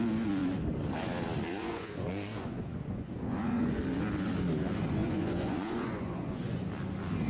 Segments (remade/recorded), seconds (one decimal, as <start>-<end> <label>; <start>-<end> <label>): 0.0-1.5 recorded; 1.5-3.8 remade; 3.8-5.0 recorded; 5.0-6.6 remade; 6.6-7.3 recorded